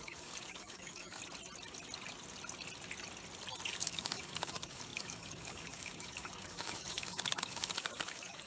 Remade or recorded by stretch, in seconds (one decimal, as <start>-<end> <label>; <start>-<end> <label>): 0.0-1.2 remade; 1.2-3.7 recorded; 3.7-8.5 remade